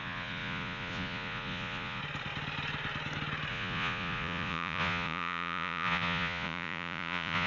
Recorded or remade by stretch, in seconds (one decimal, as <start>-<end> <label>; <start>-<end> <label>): 0.0-2.0 remade; 2.0-3.5 recorded; 3.5-7.5 remade